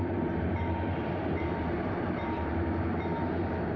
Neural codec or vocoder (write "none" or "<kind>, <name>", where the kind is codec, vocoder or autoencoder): vocoder, BigVGAN v2